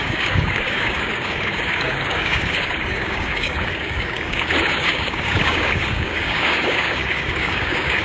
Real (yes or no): no